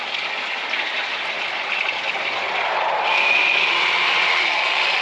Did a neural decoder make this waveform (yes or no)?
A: no